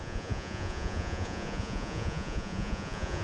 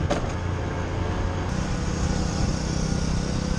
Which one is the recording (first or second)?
second